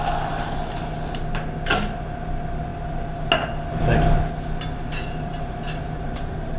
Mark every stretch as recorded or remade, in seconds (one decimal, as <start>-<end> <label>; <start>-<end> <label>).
0.0-6.6 recorded

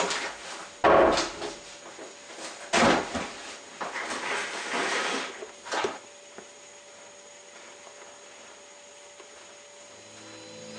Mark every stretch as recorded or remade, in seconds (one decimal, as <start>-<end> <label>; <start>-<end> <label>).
0.0-10.8 recorded

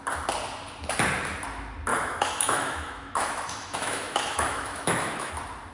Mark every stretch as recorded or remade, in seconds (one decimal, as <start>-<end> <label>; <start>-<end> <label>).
0.0-1.9 recorded; 1.9-5.3 remade; 5.3-5.7 recorded

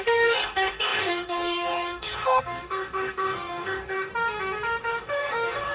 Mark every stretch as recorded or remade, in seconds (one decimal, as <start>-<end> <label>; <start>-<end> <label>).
0.0-4.1 remade; 4.1-4.8 recorded; 4.8-5.7 remade